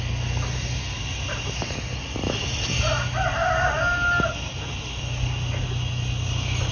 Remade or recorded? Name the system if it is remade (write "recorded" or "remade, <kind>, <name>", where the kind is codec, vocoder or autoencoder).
recorded